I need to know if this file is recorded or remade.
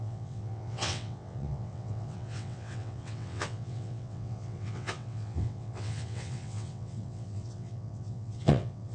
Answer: remade